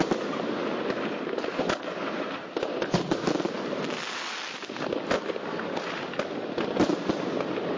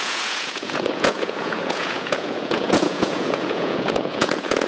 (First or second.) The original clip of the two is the first